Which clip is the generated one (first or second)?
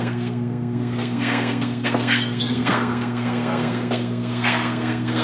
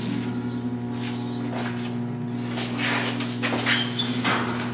first